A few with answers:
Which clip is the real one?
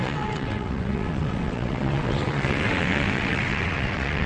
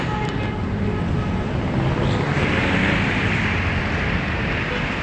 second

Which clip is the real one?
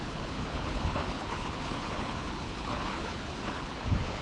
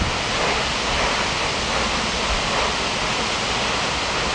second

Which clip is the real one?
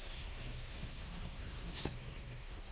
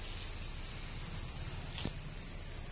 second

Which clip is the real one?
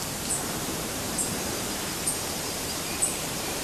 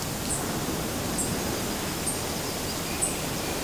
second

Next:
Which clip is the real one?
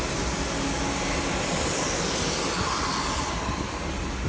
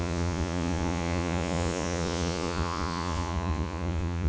first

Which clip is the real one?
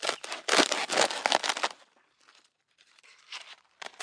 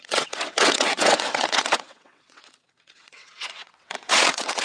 first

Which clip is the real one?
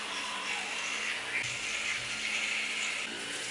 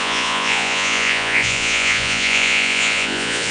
first